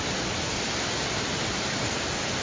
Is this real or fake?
real